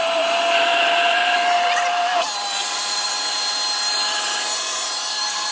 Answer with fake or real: real